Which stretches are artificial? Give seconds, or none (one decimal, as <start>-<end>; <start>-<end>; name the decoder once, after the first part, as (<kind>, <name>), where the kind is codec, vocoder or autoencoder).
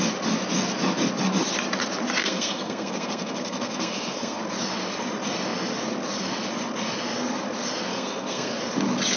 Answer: 2.2-4.4 (codec, SNAC); 7.9-8.6